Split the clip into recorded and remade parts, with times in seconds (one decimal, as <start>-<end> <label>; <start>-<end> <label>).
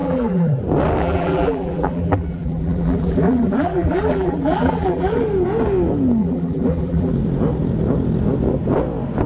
0.0-0.6 remade; 0.6-1.0 recorded; 1.0-5.2 remade; 5.2-6.2 recorded; 6.2-7.1 remade; 7.1-9.3 recorded